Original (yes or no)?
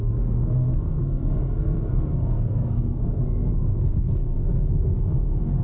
no